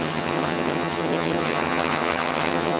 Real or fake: fake